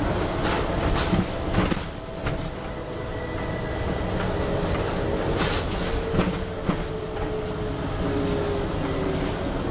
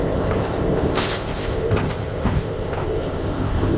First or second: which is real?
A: first